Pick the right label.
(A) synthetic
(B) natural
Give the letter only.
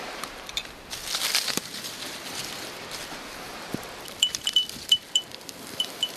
A